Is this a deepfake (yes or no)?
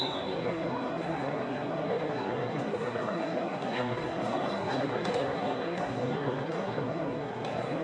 yes